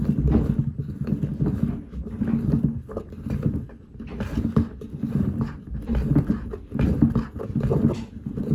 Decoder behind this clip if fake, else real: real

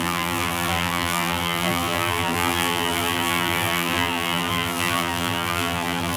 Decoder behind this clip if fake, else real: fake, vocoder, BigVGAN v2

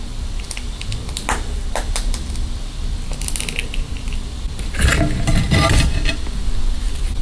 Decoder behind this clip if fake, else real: real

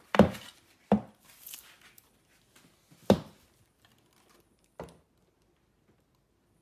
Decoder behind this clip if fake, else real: real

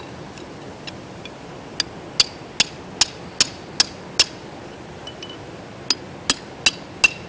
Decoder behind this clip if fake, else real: real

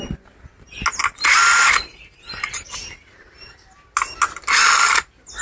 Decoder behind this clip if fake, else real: real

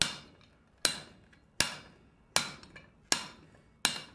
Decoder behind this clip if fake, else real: real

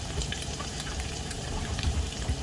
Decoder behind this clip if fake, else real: fake, vocoder, BigVGAN v2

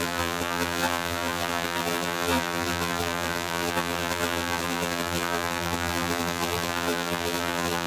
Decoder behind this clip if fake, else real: fake, vocoder, BigVGAN v2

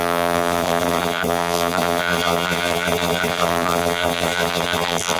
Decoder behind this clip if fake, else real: fake, vocoder, BigVGAN v2